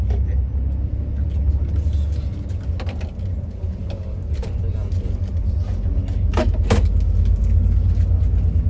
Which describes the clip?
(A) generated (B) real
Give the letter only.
B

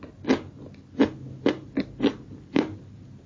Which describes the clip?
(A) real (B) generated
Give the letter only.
A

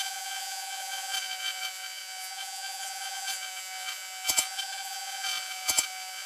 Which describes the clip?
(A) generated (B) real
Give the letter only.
A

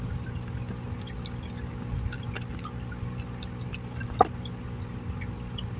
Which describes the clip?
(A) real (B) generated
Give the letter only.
A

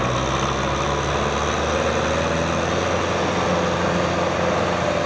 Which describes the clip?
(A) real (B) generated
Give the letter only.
A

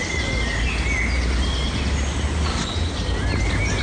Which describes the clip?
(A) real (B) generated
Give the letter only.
A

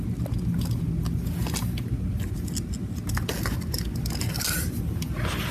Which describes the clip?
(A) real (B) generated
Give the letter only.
A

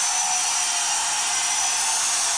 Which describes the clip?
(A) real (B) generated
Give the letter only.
A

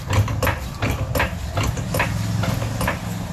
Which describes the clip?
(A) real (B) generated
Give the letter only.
A